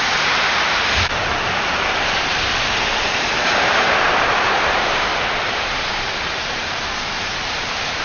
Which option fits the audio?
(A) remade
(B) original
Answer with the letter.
A